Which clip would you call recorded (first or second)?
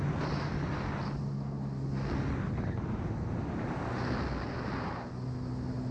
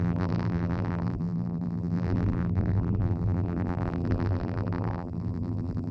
first